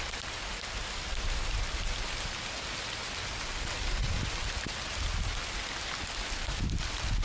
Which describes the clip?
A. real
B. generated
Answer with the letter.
A